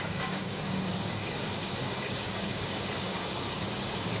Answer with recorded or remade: remade